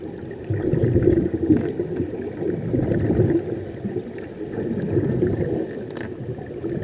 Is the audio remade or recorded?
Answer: recorded